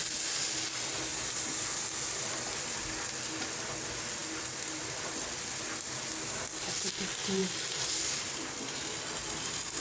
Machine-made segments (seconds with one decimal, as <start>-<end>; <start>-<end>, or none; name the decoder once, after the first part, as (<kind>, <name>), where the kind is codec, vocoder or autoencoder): 1.1-1.8 (vocoder, BigVGAN v2); 4.2-5.5; 7.4-8.9